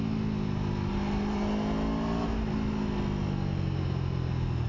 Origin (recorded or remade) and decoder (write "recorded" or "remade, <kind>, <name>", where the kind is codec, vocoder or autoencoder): recorded